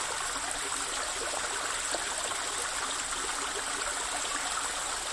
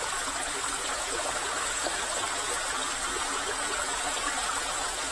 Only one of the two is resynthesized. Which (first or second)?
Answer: second